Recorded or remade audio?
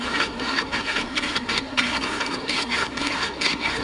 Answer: remade